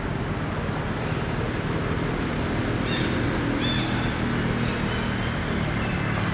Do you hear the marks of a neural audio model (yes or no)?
no